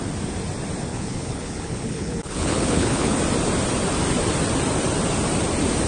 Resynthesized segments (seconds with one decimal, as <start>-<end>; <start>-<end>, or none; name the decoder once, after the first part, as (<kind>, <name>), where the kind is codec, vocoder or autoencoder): 0.9-3.2 (codec, HILCodec)